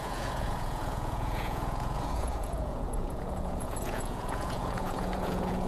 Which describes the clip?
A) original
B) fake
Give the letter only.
B